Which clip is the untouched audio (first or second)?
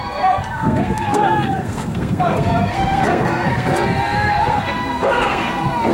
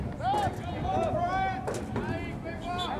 second